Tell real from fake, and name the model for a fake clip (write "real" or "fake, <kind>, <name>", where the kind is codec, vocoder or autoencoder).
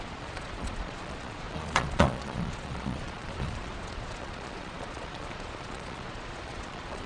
fake, vocoder, Vocos